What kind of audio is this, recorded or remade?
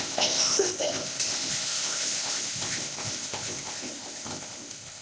remade